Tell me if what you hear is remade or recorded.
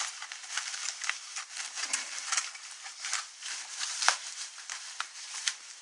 remade